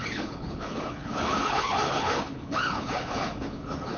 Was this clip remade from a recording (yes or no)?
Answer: yes